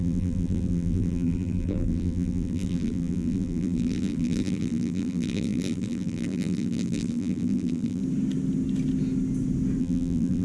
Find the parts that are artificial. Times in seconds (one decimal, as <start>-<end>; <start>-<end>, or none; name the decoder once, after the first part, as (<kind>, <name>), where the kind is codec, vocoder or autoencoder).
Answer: 0.0-8.0 (vocoder, BigVGAN v2); 9.8-10.4

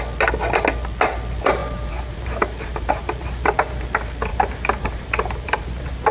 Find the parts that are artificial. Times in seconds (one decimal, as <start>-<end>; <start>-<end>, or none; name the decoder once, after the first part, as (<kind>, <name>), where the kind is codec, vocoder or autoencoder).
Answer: 1.6-3.8 (vocoder, BigVGAN v2); 4.3-6.1

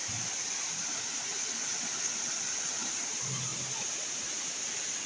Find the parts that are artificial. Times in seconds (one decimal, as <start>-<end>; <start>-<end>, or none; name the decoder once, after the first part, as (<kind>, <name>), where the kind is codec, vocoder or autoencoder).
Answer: 3.1-3.5 (vocoder, BigVGAN v2); 4.1-5.1

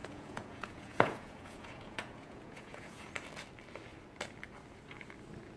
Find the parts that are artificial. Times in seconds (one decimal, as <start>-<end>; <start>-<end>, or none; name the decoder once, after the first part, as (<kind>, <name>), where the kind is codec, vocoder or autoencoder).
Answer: 0.0-3.1 (vocoder, Vocos)

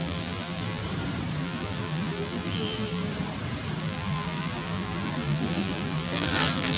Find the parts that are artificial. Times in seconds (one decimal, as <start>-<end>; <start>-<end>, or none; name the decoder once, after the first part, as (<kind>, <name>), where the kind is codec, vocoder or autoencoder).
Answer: 0.0-0.8 (vocoder, BigVGAN v2); 1.4-3.0; 3.8-6.8

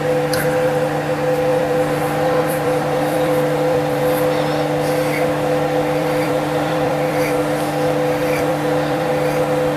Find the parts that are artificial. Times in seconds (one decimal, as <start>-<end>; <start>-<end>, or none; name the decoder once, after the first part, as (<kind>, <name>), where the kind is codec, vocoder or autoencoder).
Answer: 1.5-4.0 (vocoder, BigVGAN v2); 6.0-7.4; 8.2-9.1